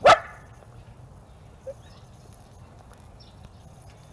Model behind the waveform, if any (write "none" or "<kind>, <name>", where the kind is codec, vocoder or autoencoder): none